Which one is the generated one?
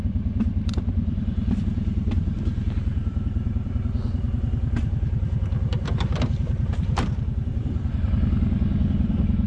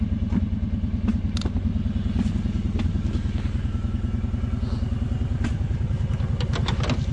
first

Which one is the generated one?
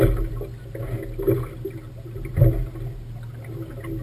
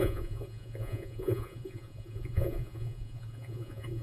second